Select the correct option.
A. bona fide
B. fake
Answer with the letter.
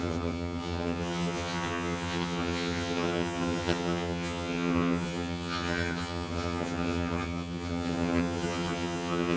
B